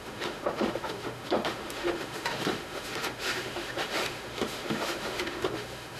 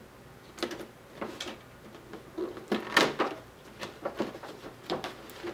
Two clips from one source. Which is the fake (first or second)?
first